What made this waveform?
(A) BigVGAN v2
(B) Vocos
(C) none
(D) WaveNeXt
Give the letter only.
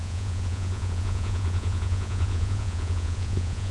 B